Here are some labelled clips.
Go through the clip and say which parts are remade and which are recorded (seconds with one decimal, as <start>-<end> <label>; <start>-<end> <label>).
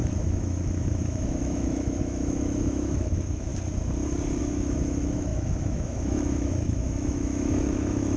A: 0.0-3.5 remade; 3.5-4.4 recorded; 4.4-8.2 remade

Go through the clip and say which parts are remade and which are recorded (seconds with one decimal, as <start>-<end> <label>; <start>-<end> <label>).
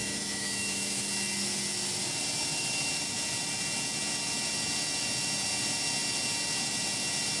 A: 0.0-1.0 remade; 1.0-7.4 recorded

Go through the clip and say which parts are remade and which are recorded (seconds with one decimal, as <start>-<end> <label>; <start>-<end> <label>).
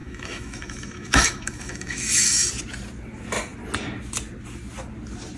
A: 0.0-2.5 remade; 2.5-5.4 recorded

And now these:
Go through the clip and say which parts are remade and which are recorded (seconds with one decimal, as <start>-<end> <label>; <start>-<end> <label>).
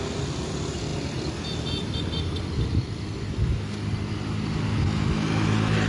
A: 0.0-5.9 recorded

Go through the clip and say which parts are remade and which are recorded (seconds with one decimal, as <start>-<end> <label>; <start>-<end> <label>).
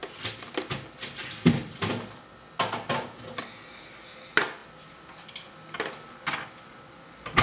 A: 0.0-7.4 recorded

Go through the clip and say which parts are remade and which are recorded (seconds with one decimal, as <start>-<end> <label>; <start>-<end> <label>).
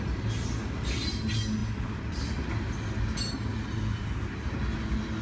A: 0.0-5.2 recorded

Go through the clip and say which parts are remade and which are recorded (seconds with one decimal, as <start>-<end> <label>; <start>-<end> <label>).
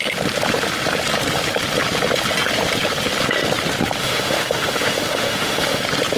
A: 0.0-4.0 recorded; 4.0-5.8 remade; 5.8-6.2 recorded